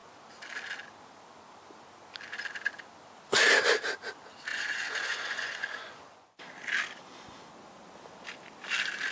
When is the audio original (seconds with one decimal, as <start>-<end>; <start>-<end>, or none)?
0.0-4.5; 6.4-9.1